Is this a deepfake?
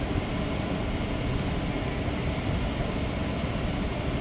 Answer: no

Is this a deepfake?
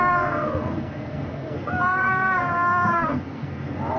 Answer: yes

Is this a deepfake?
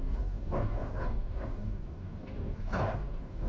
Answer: yes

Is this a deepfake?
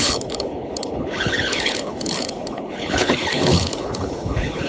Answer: yes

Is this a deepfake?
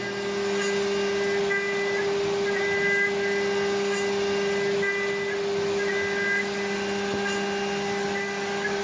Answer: no